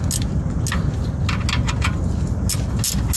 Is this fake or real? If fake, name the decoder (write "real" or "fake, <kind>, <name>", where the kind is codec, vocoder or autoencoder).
real